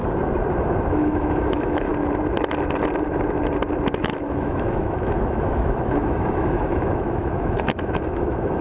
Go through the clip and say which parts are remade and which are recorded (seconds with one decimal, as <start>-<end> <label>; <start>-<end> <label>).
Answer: 0.0-0.9 recorded; 0.9-1.9 remade; 1.9-3.9 recorded; 3.9-8.6 remade